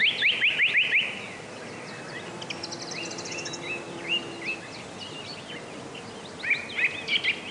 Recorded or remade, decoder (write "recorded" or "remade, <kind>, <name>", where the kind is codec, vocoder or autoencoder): recorded